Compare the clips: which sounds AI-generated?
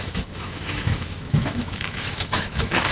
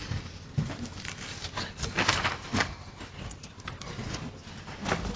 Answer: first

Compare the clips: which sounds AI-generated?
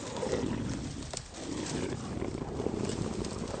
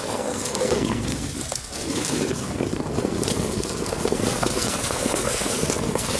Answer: second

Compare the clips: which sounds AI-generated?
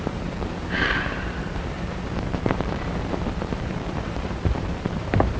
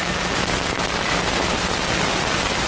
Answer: first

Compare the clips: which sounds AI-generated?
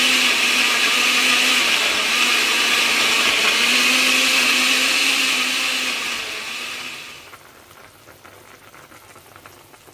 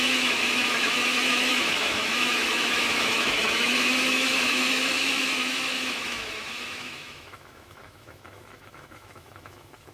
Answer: second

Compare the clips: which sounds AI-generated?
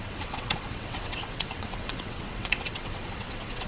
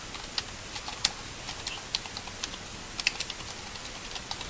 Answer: first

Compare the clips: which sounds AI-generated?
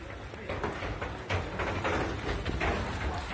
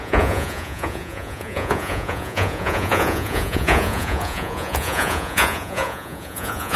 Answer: second